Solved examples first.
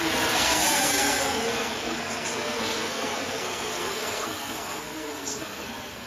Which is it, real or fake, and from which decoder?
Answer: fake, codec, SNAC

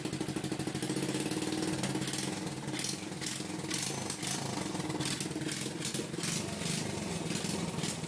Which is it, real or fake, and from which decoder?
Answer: real